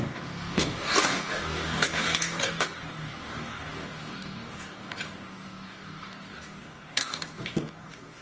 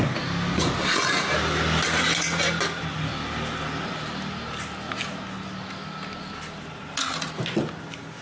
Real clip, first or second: second